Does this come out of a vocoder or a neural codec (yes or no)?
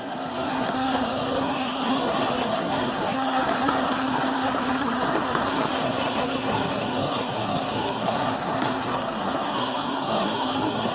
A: yes